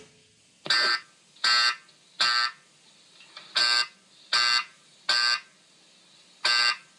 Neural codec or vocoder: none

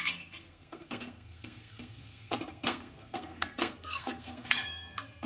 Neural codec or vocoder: codec, SNAC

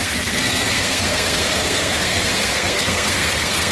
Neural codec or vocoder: codec, SNAC